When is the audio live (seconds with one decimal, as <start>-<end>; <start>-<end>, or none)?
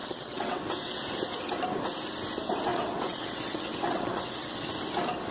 0.6-2.7; 4.7-5.3